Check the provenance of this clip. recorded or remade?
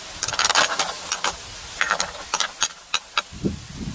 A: recorded